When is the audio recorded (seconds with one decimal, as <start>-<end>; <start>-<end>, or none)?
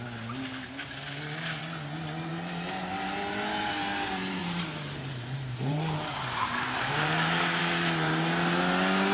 0.0-4.4; 7.6-9.1